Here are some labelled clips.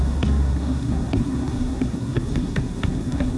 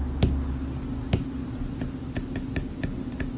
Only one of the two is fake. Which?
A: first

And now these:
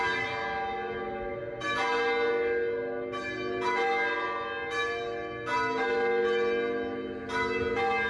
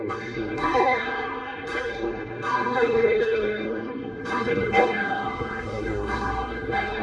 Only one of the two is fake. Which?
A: second